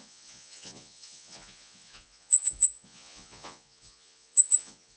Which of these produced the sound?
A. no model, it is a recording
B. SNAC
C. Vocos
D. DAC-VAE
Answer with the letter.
C